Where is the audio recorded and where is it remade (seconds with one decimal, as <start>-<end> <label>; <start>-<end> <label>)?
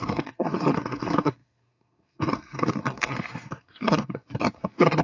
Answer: 0.0-5.0 remade